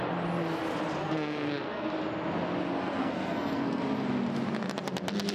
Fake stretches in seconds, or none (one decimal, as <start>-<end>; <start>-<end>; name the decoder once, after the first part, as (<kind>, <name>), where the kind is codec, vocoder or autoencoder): 1.0-1.9 (codec, SNAC); 3.0-3.8